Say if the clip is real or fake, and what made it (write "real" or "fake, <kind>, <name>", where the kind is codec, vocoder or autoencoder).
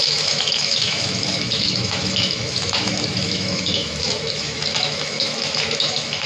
fake, autoencoder, DAC-VAE